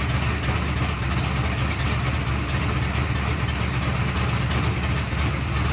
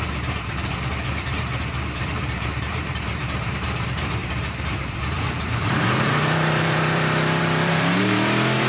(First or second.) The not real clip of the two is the second